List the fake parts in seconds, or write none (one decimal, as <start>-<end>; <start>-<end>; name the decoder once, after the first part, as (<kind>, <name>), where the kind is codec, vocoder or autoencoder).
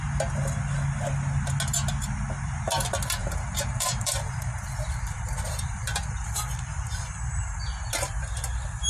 3.2-7.2 (vocoder, BigVGAN v2)